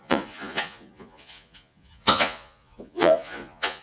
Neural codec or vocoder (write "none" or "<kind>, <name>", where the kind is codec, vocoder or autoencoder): vocoder, Vocos